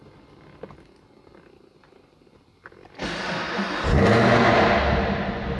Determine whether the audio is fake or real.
real